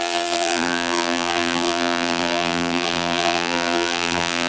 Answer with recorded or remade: remade